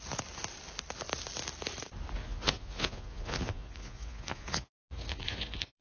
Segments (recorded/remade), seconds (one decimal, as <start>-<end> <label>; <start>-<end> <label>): 0.0-2.2 recorded; 2.2-5.8 remade